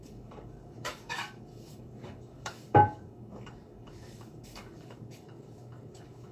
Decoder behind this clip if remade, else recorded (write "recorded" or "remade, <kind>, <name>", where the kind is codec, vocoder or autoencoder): remade, codec, DAC